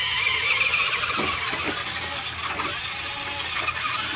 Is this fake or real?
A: real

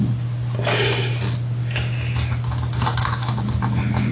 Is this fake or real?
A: real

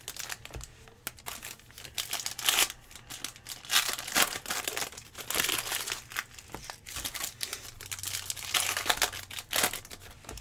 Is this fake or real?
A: real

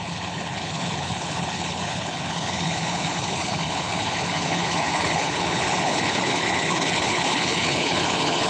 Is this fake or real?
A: fake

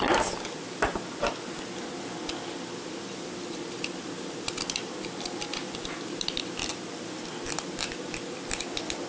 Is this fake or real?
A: real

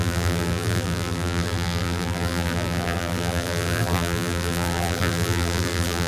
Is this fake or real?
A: fake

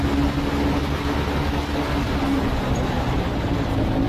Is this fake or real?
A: real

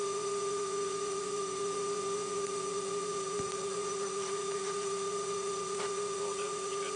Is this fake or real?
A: fake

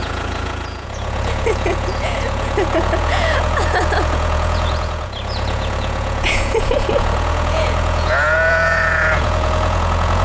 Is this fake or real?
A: fake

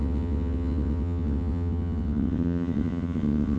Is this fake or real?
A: fake